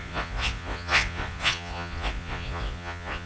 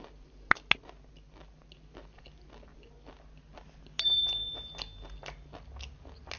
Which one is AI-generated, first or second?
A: first